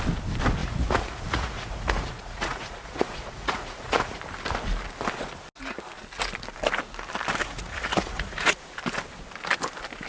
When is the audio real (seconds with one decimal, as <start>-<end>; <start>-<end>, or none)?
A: 0.0-0.6; 4.2-7.4; 8.8-10.1